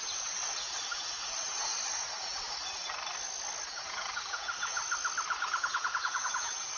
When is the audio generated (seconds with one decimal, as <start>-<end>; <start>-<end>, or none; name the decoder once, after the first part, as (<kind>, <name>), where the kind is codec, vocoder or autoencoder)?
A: 0.0-1.7 (vocoder, Vocos); 3.7-4.8; 5.6-6.8